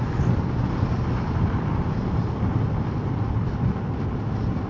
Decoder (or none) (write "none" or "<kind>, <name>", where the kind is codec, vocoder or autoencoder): none